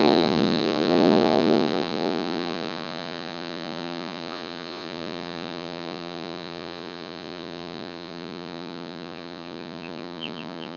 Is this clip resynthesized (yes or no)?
yes